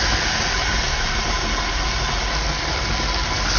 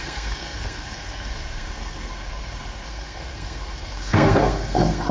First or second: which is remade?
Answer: second